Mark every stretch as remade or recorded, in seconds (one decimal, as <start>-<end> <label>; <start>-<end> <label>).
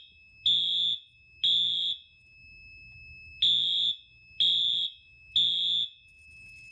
0.0-6.7 recorded